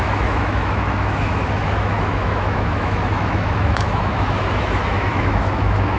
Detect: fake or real fake